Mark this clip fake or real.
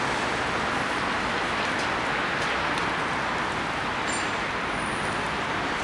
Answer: real